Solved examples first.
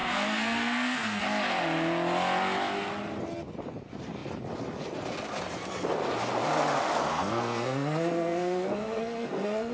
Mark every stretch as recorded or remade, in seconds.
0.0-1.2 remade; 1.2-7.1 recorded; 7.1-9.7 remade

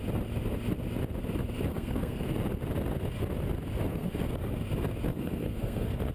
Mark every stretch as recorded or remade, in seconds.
0.0-1.7 recorded; 1.7-2.2 remade; 2.2-3.9 recorded; 3.9-4.5 remade; 4.5-5.1 recorded; 5.1-6.1 remade